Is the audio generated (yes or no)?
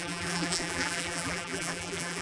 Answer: yes